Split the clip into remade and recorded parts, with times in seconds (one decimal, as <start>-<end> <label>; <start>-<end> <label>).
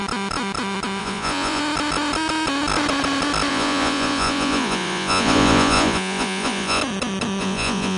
0.0-1.0 recorded; 1.0-1.6 remade; 1.6-3.5 recorded; 3.5-6.8 remade; 6.8-7.4 recorded; 7.4-8.0 remade